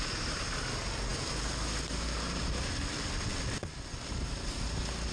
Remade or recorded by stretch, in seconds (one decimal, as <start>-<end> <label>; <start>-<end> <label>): 0.0-5.1 recorded